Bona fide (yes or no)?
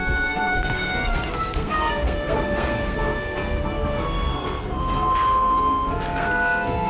no